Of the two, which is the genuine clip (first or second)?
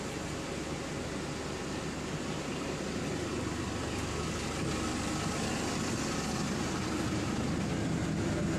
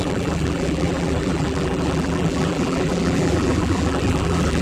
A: first